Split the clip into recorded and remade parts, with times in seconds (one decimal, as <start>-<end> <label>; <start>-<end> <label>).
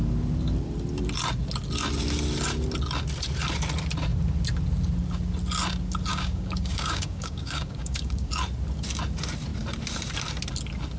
0.0-6.1 recorded; 6.1-8.3 remade; 8.3-11.0 recorded